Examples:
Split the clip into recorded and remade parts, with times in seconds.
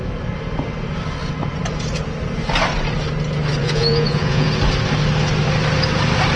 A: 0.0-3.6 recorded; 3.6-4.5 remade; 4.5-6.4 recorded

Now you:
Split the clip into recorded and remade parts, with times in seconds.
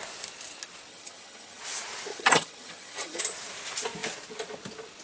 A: 0.0-0.9 recorded; 0.9-1.6 remade; 1.6-2.1 recorded; 2.1-3.2 remade; 3.2-5.0 recorded